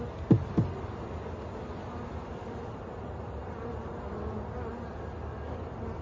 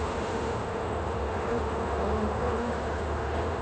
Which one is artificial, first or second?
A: second